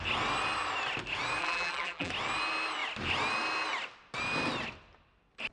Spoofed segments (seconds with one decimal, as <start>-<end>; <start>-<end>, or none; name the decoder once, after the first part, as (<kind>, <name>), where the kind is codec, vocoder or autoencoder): 1.4-2.1 (vocoder, BigVGAN v2)